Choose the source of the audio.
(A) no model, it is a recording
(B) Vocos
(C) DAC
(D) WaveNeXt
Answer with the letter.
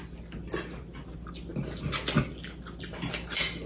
A